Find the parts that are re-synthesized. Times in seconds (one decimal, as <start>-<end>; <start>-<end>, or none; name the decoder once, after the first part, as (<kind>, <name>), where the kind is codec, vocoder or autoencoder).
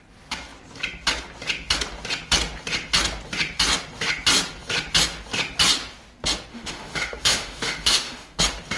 6.5-8.4 (autoencoder, DAC-VAE)